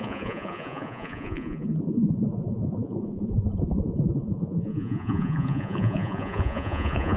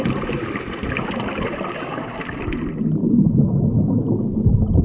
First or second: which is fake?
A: first